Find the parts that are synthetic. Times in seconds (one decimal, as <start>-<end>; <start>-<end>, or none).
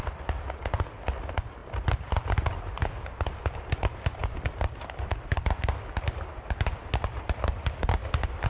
none